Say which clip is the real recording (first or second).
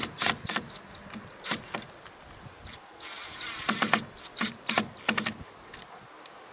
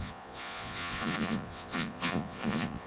first